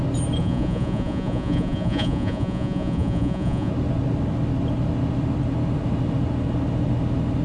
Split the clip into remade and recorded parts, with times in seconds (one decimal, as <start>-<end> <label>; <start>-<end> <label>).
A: 0.0-0.4 recorded; 0.4-3.7 remade; 3.7-7.4 recorded